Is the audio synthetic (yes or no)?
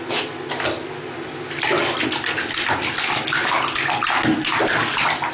no